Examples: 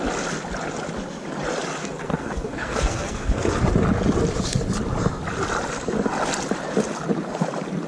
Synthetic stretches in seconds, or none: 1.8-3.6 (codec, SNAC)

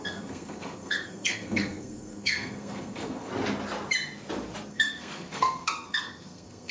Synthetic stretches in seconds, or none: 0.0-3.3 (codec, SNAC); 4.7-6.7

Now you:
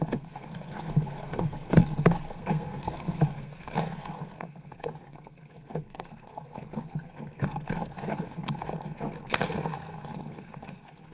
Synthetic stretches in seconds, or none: 0.0-11.1 (codec, SNAC)

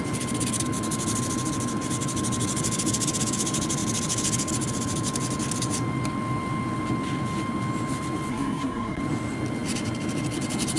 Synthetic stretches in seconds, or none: 8.3-9.0 (codec, SNAC)

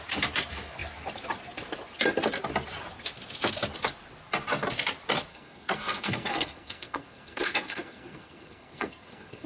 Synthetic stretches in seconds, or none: 5.3-9.5 (codec, SNAC)

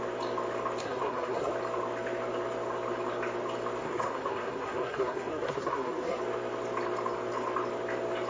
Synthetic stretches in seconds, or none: 0.8-1.5 (codec, SNAC); 3.8-6.2